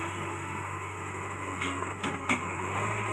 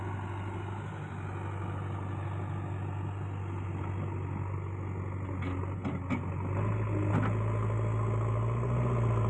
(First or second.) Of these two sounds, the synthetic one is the first